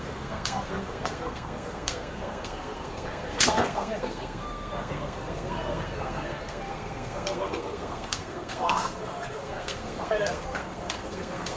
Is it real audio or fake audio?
fake